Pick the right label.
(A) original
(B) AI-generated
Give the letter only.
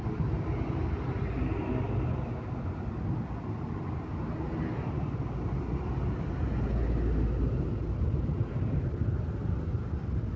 A